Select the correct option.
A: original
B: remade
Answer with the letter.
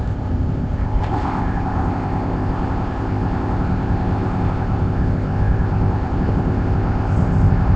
B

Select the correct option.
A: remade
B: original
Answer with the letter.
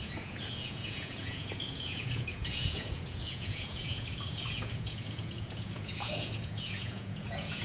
A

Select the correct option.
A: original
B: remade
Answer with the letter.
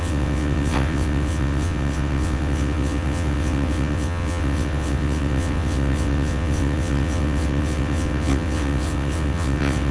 B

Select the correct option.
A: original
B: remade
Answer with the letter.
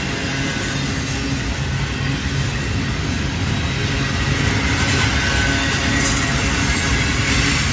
A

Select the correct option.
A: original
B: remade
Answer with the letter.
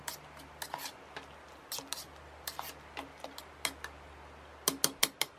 A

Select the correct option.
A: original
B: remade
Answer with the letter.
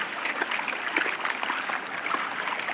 A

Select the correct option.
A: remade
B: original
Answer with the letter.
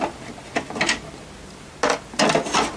B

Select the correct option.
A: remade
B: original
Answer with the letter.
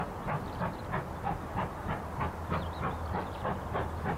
B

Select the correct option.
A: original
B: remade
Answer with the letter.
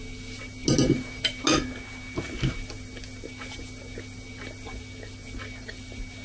A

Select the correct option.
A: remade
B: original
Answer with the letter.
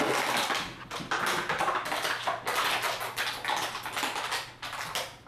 B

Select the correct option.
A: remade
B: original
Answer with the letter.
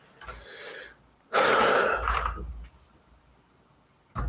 B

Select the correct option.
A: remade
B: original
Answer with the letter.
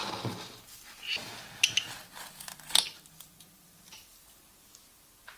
B